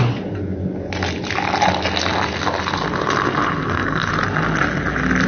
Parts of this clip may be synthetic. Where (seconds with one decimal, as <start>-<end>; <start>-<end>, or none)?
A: 3.6-4.1